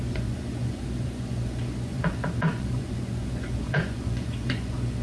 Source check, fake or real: fake